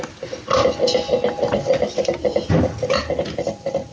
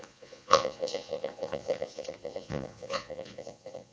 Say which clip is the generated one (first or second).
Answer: second